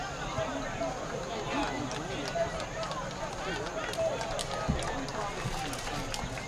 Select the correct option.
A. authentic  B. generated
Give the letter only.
A